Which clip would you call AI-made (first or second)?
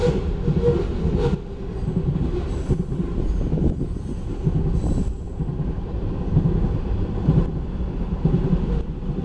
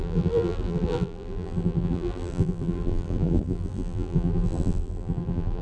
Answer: second